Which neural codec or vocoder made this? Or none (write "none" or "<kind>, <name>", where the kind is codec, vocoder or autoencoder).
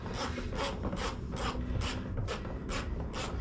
none